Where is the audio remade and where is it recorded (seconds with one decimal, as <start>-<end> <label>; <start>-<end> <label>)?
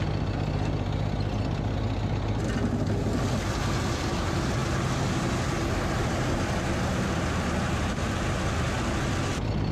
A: 0.0-9.7 recorded